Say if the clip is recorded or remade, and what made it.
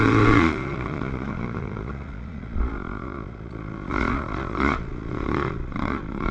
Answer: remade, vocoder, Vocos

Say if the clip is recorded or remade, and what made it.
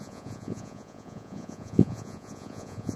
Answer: remade, vocoder, Vocos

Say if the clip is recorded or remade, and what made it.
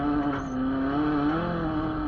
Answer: recorded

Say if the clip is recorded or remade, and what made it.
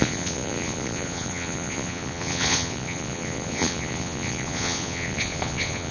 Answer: remade, vocoder, Vocos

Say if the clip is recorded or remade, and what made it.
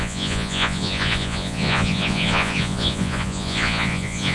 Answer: remade, vocoder, Vocos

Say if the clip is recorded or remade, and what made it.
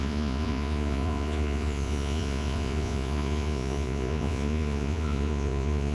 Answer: remade, vocoder, Vocos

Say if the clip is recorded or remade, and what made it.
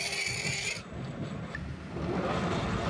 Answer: recorded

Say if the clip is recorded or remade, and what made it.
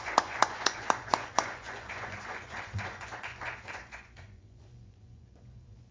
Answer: remade, vocoder, Vocos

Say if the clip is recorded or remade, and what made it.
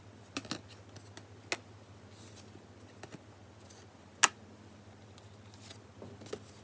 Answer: recorded